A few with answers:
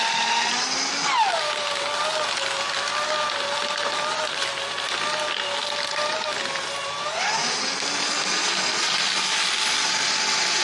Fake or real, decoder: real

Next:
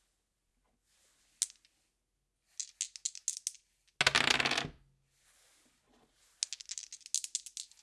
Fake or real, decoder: real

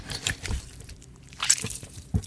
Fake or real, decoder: fake, vocoder, BigVGAN v2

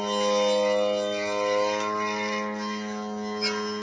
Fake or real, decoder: real